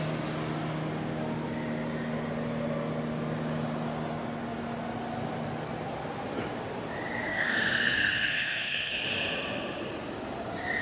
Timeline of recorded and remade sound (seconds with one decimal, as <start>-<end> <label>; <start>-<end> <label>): 0.0-7.3 recorded; 7.3-8.9 remade; 8.9-10.8 recorded